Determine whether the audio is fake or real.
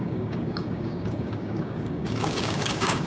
fake